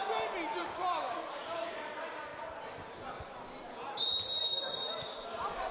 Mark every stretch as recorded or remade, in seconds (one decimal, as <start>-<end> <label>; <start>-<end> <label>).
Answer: 0.0-5.7 recorded